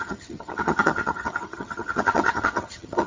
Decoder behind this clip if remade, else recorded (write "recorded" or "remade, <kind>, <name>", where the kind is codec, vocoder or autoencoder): remade, vocoder, HiFi-GAN